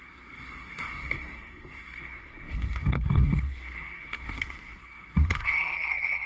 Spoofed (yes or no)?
yes